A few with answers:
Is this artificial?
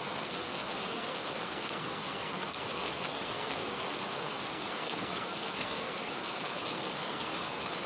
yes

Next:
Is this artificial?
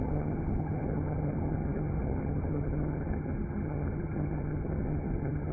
yes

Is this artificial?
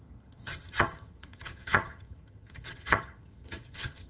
yes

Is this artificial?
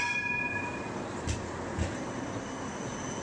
no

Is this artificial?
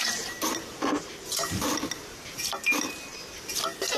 yes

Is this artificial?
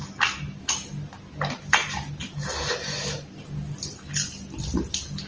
no